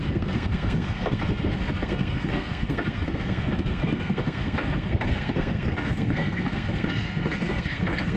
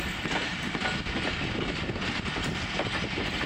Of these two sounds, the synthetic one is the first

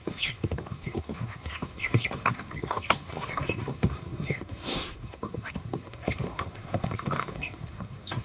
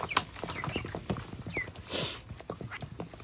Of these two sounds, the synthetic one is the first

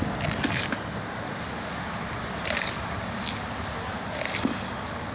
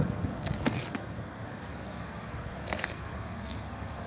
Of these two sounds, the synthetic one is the second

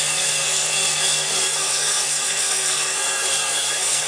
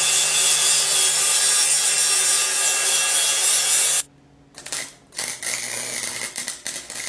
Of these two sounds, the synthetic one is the first